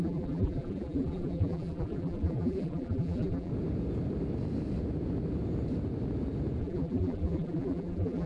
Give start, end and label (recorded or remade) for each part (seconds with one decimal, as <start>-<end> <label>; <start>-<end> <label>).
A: 0.0-3.5 remade; 3.5-6.6 recorded; 6.6-8.3 remade